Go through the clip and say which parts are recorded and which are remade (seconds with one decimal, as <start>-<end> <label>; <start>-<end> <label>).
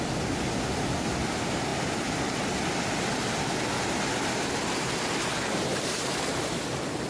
0.0-1.7 remade; 1.7-6.0 recorded; 6.0-7.1 remade